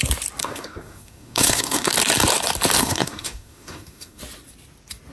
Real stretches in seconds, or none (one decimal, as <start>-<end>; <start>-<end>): 0.0-0.4; 1.9-2.8; 4.2-5.1